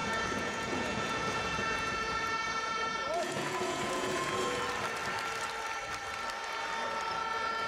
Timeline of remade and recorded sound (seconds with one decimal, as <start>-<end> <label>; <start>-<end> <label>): 0.0-4.6 remade; 4.6-7.7 recorded